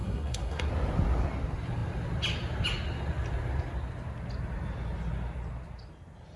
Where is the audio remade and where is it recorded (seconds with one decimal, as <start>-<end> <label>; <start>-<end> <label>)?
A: 0.0-0.7 remade; 0.7-6.4 recorded